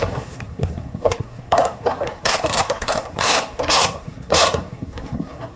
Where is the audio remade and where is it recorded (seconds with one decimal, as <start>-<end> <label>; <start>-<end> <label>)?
0.0-5.6 remade